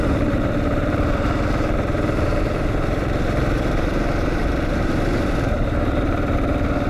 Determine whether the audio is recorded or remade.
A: remade